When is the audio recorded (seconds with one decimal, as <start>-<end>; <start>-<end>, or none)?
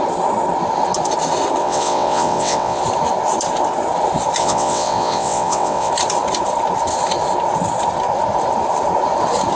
0.0-1.6; 2.8-4.4; 5.9-9.6